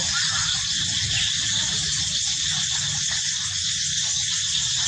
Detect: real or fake real